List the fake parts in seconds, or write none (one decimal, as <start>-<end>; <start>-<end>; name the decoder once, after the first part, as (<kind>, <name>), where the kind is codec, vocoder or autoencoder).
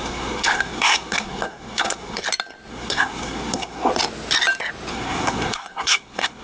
0.0-2.2 (codec, SNAC); 2.7-3.9; 4.9-6.4